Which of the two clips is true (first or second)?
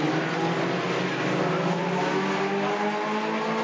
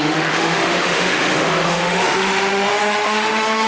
first